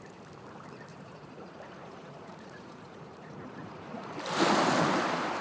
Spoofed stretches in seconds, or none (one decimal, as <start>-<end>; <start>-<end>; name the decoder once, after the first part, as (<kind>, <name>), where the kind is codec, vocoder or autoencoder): 0.9-4.1 (vocoder, Vocos)